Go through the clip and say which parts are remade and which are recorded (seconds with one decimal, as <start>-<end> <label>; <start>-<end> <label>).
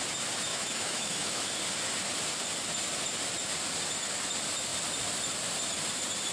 0.0-0.5 recorded; 0.5-1.5 remade; 1.5-6.3 recorded